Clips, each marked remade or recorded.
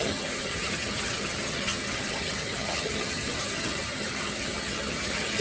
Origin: remade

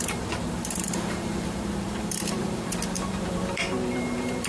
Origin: remade